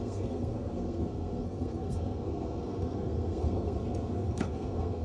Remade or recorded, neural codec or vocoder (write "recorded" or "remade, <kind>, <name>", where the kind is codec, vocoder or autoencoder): remade, codec, SNAC